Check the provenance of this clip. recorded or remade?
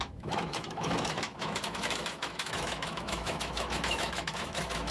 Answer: remade